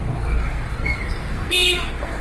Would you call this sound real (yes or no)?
no